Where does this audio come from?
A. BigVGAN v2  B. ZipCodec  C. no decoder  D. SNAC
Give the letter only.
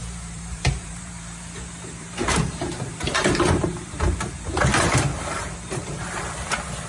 A